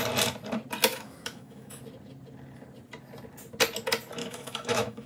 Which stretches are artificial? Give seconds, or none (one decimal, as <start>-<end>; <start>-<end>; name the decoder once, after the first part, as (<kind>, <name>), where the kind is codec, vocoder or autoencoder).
0.9-1.8 (autoencoder, DAC-VAE); 4.2-5.1